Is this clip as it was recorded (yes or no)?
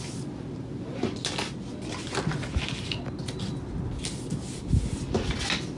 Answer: yes